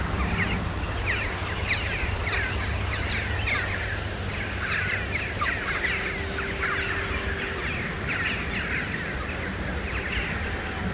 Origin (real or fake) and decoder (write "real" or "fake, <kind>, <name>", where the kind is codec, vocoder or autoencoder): real